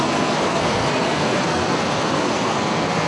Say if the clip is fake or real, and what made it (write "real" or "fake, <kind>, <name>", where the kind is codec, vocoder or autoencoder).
fake, codec, SNAC